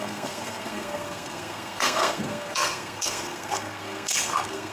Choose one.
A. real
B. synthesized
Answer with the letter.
B